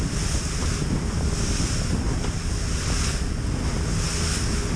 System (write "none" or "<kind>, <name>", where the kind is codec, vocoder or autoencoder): none